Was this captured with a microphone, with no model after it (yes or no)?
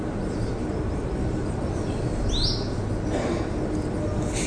yes